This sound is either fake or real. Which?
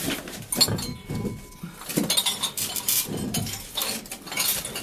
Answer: real